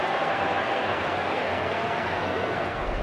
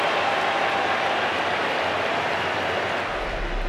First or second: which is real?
second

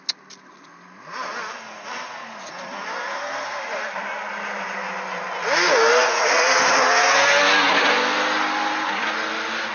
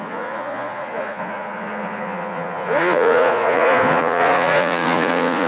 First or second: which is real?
first